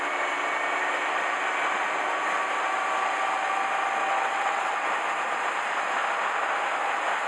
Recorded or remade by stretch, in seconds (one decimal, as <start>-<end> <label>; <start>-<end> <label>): 0.0-4.0 recorded; 4.0-4.9 remade; 4.9-7.3 recorded